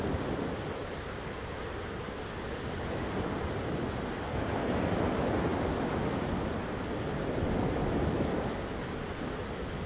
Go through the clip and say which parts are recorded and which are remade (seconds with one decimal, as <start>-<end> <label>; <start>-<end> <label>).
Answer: 0.0-0.8 recorded; 0.8-1.6 remade; 1.6-9.9 recorded

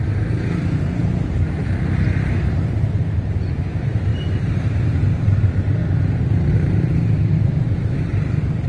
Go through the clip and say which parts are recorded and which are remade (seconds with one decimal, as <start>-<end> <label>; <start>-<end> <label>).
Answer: 0.0-1.0 remade; 1.0-2.6 recorded; 2.6-5.8 remade; 5.8-6.5 recorded; 6.5-8.7 remade

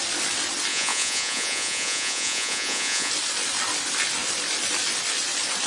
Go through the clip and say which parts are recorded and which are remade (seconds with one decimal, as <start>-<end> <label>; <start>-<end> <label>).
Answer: 0.0-0.7 recorded; 0.7-3.1 remade; 3.1-5.7 recorded